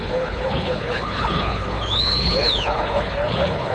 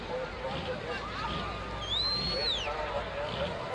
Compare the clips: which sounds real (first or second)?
second